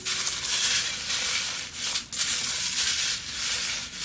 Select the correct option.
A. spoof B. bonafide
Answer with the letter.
B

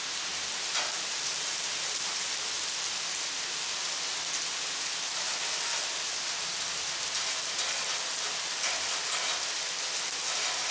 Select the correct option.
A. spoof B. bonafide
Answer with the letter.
B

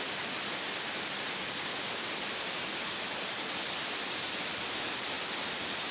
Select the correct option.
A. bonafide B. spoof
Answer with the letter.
A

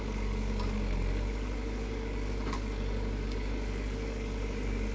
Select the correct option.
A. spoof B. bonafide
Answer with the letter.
A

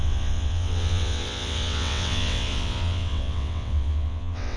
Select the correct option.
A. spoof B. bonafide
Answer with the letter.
A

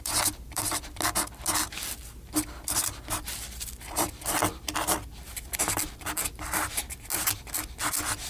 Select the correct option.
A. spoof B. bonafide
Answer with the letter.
B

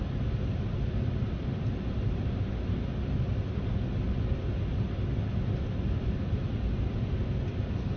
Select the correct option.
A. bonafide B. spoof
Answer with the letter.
A